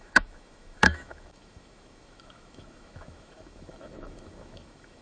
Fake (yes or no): yes